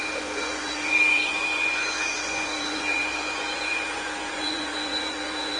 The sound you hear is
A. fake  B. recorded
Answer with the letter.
A